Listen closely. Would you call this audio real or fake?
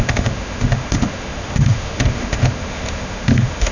fake